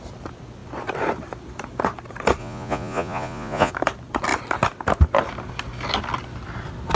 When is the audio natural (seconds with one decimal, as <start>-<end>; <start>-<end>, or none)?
0.0-2.4; 3.7-7.0